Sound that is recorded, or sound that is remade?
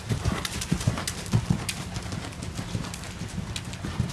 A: recorded